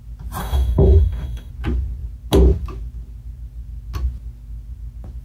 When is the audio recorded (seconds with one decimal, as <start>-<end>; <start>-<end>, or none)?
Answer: 0.0-0.4; 1.5-5.2